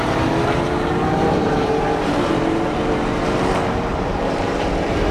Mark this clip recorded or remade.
remade